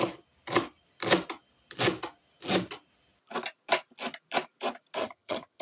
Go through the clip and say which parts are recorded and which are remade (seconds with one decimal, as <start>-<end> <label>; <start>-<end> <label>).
0.0-5.0 recorded; 5.0-5.6 remade